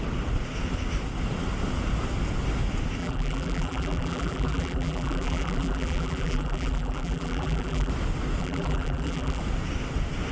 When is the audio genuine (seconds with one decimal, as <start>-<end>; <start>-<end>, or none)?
0.0-3.0; 7.9-8.4; 9.4-10.3